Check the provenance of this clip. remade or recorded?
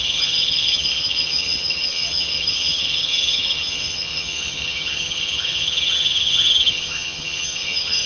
remade